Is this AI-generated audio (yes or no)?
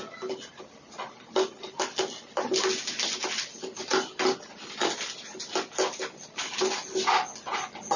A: no